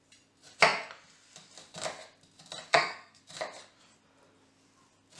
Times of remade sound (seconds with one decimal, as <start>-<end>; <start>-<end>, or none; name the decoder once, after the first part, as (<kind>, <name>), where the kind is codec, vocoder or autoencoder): 2.7-3.2 (codec, SNAC)